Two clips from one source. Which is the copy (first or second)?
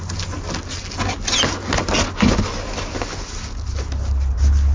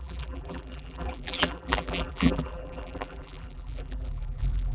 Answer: second